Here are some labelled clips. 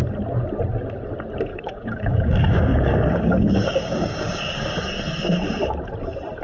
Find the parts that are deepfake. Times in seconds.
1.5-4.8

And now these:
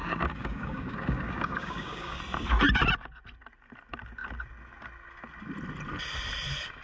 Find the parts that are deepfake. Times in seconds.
0.0-2.2

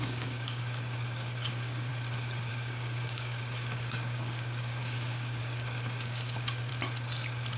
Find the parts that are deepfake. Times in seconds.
0.0-1.9; 2.5-6.7

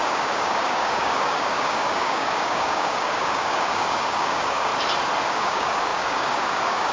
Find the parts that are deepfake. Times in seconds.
0.0-4.7; 5.3-6.9

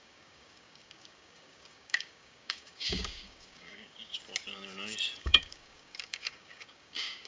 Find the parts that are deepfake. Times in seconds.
0.0-4.1; 5.2-7.3

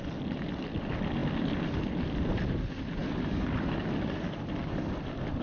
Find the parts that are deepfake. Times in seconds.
none